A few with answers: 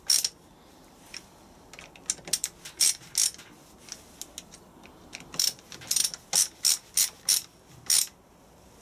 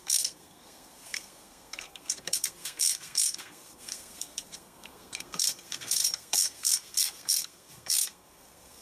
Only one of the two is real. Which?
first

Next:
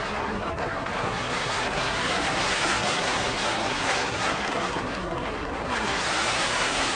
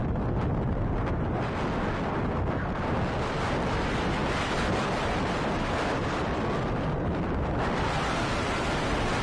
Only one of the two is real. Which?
second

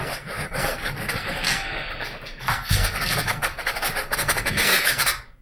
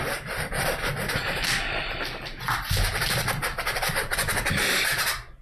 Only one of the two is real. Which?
second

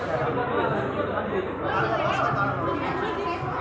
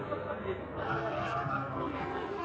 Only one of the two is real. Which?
first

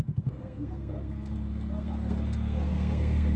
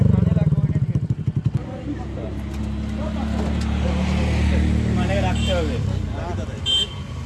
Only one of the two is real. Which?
second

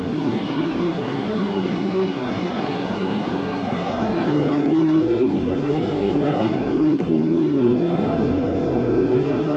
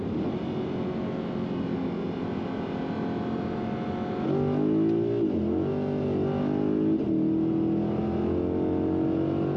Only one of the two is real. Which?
second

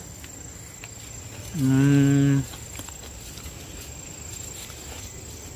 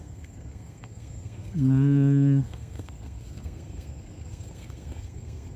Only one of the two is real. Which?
first